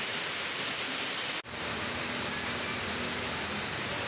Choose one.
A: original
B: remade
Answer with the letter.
A